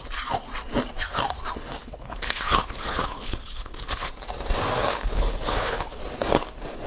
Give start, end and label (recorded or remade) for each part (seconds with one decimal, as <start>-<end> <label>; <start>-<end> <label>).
0.0-1.8 recorded; 1.8-4.1 remade; 4.1-4.9 recorded; 4.9-6.0 remade; 6.0-6.9 recorded